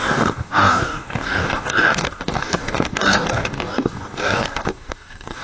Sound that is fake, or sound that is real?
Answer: fake